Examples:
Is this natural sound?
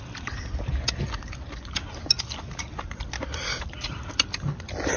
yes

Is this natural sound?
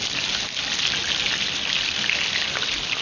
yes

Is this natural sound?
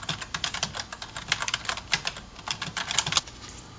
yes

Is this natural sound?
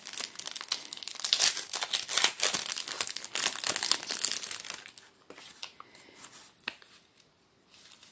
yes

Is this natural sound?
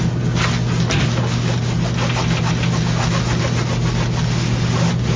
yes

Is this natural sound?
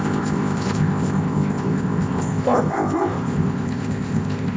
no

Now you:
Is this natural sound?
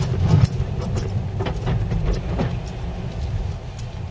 yes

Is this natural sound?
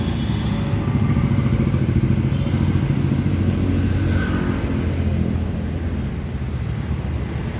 yes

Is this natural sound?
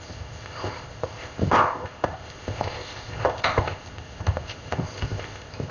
no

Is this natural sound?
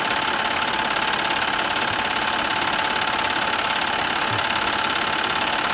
yes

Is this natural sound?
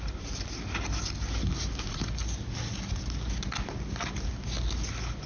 yes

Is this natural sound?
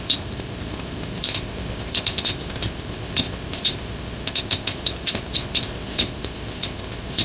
no